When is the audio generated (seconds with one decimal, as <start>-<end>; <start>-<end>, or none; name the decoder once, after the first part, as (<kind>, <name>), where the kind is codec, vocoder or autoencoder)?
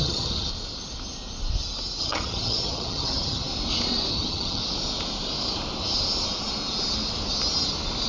0.0-0.5 (vocoder, HiFi-GAN); 2.0-3.5; 4.1-4.6